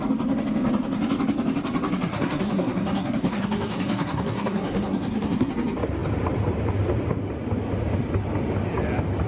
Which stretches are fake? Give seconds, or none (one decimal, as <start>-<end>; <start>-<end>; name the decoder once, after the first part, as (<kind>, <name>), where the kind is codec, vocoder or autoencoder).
2.1-5.5 (codec, SNAC)

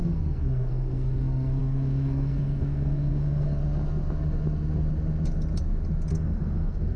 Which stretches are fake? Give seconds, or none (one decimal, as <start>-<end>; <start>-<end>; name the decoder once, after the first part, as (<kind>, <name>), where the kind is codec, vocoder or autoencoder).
0.0-3.6 (codec, SNAC); 6.1-7.0